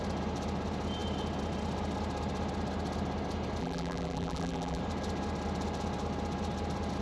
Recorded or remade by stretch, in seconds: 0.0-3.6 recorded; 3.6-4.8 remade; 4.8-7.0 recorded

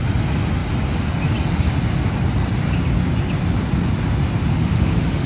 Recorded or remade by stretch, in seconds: 0.0-4.5 recorded; 4.5-5.3 remade

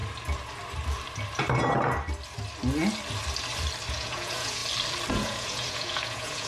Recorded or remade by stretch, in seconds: 0.0-3.9 recorded; 3.9-4.6 remade; 4.6-5.1 recorded; 5.1-6.5 remade